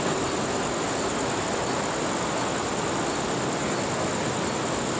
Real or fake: real